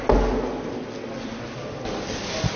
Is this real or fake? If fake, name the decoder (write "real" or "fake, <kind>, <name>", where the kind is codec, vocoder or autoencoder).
real